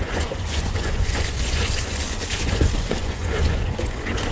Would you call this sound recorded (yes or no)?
no